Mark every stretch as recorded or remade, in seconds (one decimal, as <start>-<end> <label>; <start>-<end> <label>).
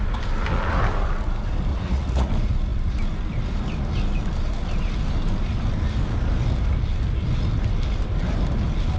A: 0.0-1.7 recorded; 1.7-2.3 remade; 2.3-9.0 recorded